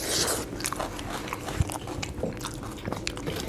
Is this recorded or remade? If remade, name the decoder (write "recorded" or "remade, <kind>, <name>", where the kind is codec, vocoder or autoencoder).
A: recorded